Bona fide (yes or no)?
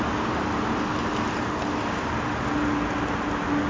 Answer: yes